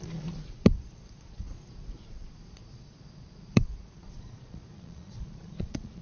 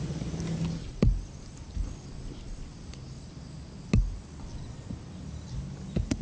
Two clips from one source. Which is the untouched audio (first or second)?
second